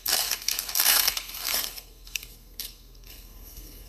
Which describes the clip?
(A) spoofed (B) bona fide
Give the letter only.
A